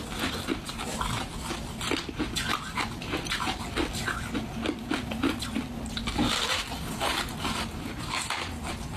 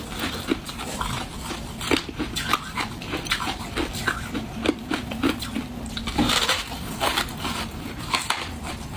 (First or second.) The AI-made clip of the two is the second